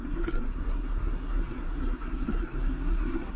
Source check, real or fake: fake